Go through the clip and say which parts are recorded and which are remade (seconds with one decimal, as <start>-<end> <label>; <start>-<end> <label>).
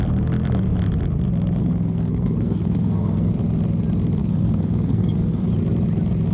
0.0-1.6 recorded; 1.6-3.3 remade; 3.3-4.2 recorded; 4.2-5.5 remade; 5.5-6.3 recorded